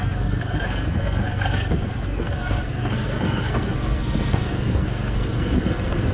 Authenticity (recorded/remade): remade